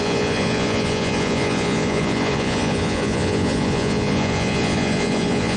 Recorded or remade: remade